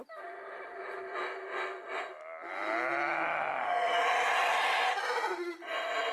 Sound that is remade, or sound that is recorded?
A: recorded